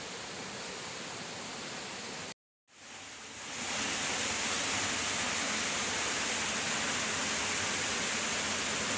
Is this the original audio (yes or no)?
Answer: yes